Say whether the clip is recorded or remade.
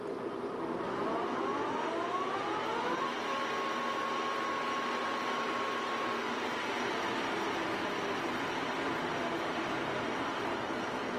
recorded